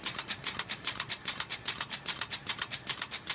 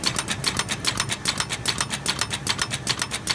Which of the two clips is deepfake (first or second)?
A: first